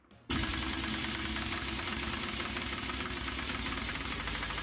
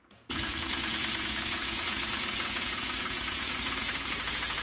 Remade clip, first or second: second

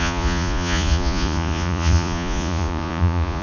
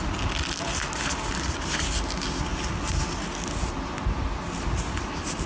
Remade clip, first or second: first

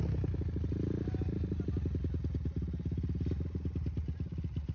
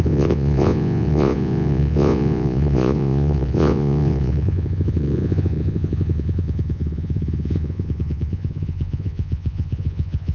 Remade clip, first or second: second